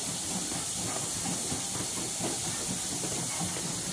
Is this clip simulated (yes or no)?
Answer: no